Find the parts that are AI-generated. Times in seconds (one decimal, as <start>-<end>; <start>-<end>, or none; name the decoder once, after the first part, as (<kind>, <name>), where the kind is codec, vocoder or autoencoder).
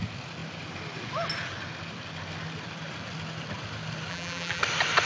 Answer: 4.1-4.6 (vocoder, BigVGAN v2)